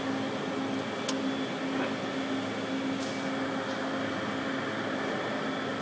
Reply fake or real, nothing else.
real